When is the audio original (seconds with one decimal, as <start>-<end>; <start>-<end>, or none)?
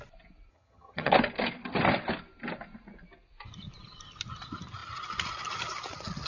0.0-0.5; 1.1-6.3